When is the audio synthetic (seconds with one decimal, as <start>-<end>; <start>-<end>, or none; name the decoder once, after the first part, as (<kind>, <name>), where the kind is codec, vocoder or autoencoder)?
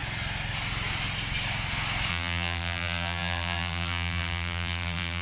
2.1-5.2 (vocoder, BigVGAN v2)